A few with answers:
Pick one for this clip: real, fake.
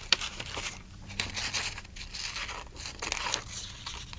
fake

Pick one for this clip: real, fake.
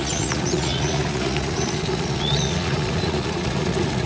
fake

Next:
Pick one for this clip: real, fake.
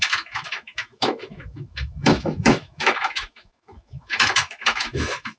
fake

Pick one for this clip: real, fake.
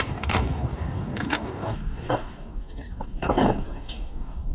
fake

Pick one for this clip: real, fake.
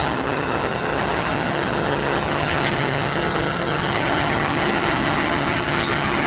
fake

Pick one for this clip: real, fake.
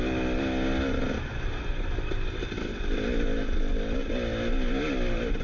real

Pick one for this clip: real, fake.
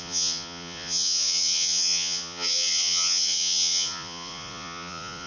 fake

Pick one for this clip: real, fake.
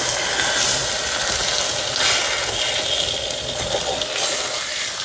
real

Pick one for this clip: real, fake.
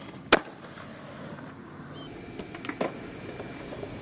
real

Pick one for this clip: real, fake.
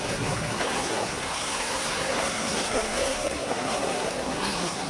fake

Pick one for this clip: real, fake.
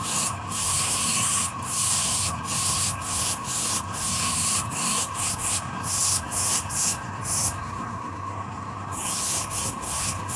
fake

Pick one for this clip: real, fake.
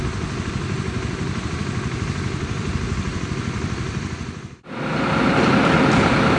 real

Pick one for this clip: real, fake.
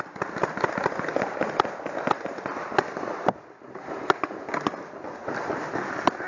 real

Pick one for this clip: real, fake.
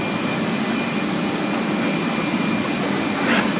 real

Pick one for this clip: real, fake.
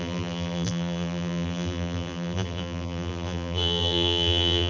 fake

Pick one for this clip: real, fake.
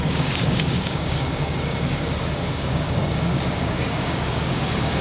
fake